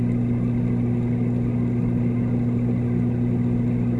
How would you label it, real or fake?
real